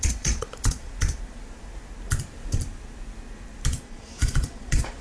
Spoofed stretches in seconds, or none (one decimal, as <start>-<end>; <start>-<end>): 0.0-0.9; 3.7-5.0